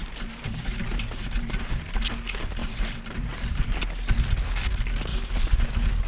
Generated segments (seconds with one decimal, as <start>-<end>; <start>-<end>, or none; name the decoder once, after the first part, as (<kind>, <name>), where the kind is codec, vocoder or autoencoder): 0.0-2.0 (vocoder, BigVGAN v2); 2.6-3.7; 5.1-5.6